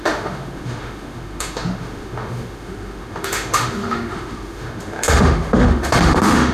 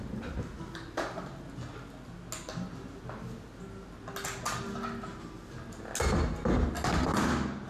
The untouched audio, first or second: second